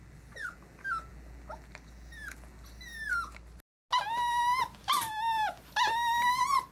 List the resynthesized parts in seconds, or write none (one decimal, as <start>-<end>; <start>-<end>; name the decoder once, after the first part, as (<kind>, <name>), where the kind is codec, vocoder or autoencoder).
none